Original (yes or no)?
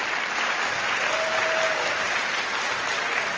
yes